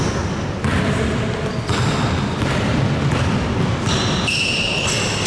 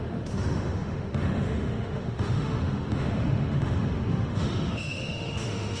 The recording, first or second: first